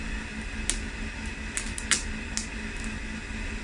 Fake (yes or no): no